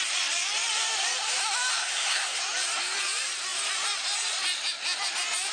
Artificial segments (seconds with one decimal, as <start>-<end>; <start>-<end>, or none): 1.7-2.4